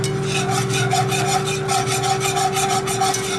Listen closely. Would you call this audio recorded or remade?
recorded